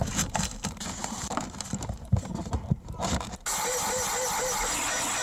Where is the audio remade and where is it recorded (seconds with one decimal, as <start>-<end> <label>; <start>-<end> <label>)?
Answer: 0.0-2.3 remade; 2.3-5.2 recorded